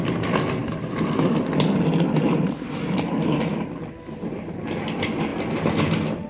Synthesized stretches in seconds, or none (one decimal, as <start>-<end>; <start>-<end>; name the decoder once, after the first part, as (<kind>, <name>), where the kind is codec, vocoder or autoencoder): none